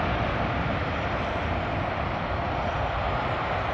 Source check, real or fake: real